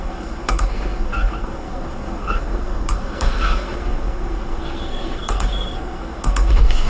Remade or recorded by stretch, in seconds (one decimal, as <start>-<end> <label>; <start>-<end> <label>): 0.0-6.9 remade